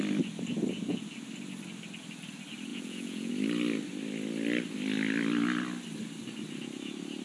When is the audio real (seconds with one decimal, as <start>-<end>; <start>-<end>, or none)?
0.0-2.7; 3.3-7.2